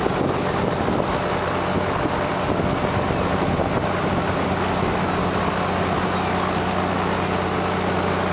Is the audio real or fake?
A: real